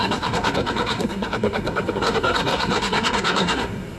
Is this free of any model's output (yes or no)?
no